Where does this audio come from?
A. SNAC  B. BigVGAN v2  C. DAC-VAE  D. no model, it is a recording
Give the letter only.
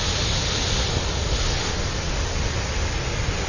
D